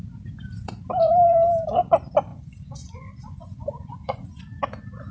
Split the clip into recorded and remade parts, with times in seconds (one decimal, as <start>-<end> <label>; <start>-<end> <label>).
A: 0.0-2.3 recorded; 2.3-4.4 remade; 4.4-5.1 recorded